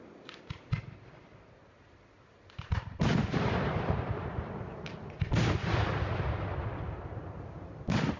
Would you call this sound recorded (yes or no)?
no